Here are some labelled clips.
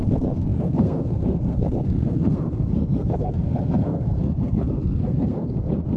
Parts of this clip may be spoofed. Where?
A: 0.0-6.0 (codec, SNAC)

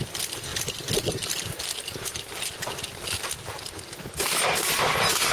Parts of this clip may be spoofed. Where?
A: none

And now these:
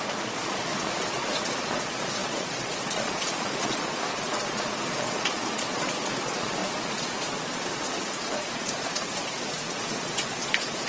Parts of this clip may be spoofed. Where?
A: 0.0-10.9 (vocoder, Vocos)

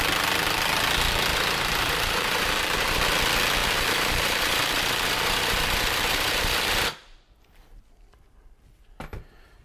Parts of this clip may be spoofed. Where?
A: 1.3-3.0 (vocoder, BigVGAN v2); 3.6-7.9

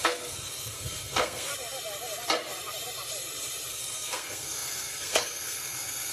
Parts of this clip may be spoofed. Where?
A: 0.0-1.5 (codec, SNAC); 3.7-6.1

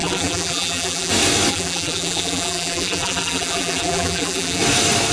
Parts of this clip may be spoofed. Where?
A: 0.0-1.1 (vocoder, BigVGAN v2); 1.5-4.6